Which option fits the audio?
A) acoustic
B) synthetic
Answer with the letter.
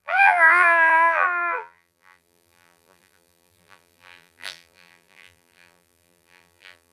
B